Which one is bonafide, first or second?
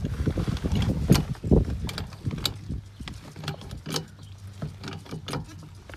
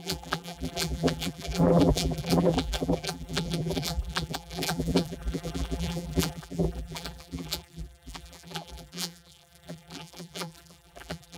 first